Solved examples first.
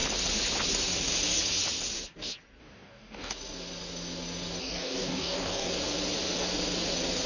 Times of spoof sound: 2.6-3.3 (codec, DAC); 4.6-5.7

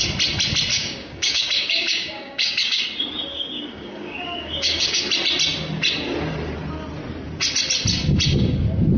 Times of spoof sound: 0.7-2.8 (codec, DAC); 3.3-5.0

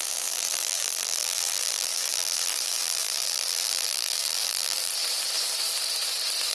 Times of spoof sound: 0.0-4.9 (vocoder, BigVGAN v2)

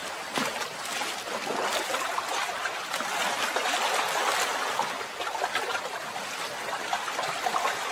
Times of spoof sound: none

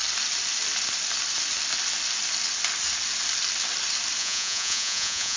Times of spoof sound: 4.2-5.4 (vocoder, Vocos)

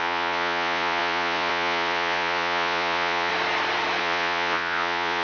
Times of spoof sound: 0.0-3.3 (vocoder, Vocos); 4.0-5.2

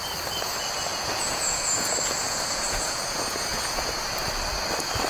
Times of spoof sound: 0.9-4.0 (vocoder, Vocos)

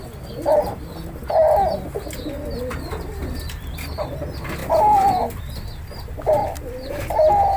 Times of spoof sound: 6.4-6.9 (vocoder, BigVGAN v2)